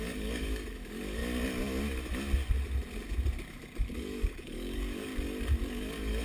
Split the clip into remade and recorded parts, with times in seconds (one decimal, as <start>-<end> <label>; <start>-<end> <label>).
0.0-1.2 remade; 1.2-3.5 recorded; 3.5-5.1 remade; 5.1-5.7 recorded; 5.7-6.2 remade